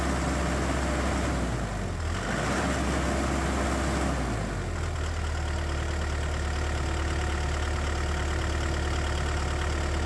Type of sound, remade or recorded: recorded